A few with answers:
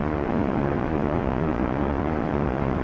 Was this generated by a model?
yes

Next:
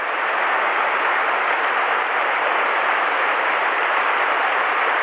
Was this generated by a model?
no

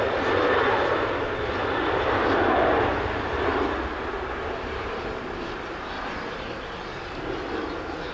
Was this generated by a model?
no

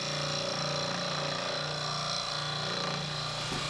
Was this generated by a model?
no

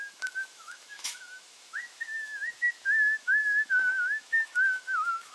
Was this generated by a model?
yes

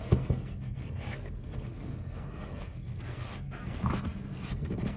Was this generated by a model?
yes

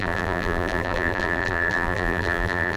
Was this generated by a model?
yes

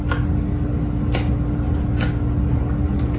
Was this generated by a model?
no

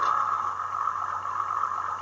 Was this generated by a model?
no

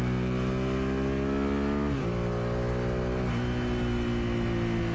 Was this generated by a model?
no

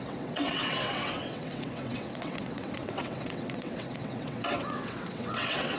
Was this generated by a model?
yes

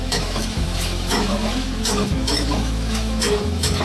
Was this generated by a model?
yes